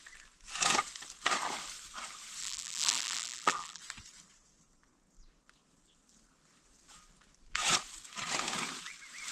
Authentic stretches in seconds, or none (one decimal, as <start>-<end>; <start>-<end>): 0.0-2.4; 3.8-9.3